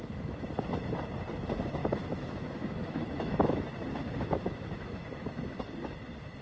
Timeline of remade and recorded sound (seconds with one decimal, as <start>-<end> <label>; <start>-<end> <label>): 0.0-1.8 recorded; 1.8-5.6 remade; 5.6-6.4 recorded